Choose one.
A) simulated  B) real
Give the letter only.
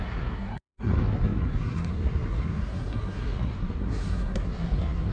A